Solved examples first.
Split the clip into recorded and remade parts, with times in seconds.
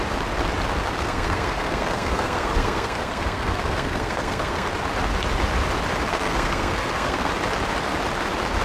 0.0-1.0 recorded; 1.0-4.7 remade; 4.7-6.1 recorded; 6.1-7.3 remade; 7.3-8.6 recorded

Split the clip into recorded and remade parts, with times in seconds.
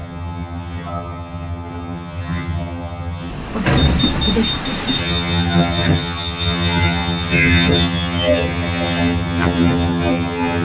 0.0-3.3 remade; 3.3-5.0 recorded; 5.0-10.6 remade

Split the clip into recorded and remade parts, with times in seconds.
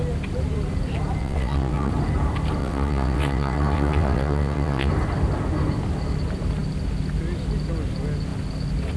0.0-1.2 recorded; 1.2-1.9 remade; 1.9-2.6 recorded; 2.6-4.9 remade; 4.9-9.0 recorded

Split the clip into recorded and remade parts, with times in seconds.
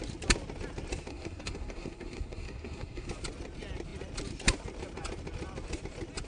0.0-1.1 recorded; 1.1-3.1 remade; 3.1-6.3 recorded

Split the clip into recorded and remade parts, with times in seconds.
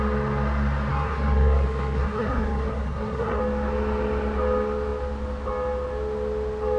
0.0-0.9 recorded; 0.9-3.4 remade; 3.4-6.8 recorded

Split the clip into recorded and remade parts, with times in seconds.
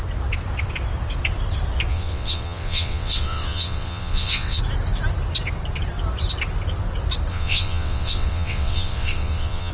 0.0-1.9 recorded; 1.9-4.6 remade; 4.6-7.3 recorded; 7.3-9.7 remade